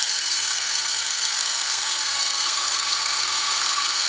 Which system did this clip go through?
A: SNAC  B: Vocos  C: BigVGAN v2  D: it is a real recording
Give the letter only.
A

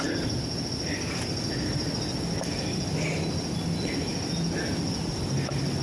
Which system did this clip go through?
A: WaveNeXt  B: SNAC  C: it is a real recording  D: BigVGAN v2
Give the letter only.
C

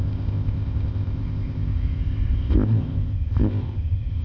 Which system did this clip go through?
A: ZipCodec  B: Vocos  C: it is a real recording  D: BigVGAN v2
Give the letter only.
A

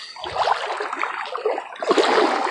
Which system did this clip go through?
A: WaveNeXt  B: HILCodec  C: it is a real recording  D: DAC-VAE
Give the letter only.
C